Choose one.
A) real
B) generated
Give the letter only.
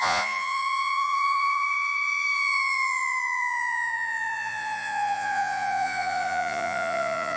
B